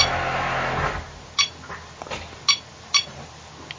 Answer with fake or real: real